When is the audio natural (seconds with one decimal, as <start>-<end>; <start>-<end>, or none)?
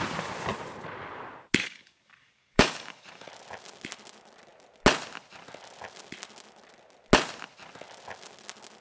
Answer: 0.0-1.6; 3.3-8.8